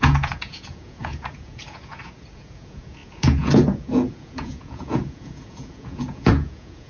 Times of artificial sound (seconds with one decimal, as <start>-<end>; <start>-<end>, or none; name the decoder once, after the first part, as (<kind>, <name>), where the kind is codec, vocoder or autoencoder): 0.0-6.9 (vocoder, Vocos)